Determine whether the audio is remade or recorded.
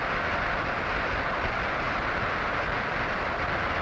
recorded